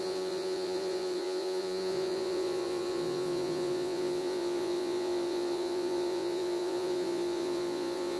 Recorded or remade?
remade